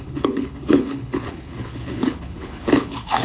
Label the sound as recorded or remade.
remade